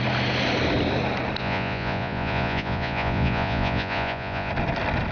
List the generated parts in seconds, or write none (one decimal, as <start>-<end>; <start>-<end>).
1.4-4.5